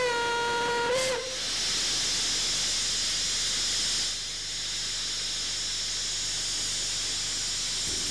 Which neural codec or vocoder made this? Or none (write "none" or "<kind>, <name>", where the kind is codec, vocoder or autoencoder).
none